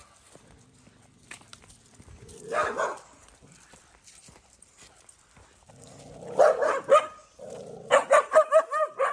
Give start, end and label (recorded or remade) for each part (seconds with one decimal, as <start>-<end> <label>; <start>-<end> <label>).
0.0-2.6 recorded; 2.6-5.7 remade; 5.7-9.1 recorded